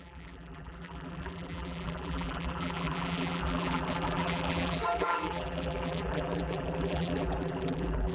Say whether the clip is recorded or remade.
remade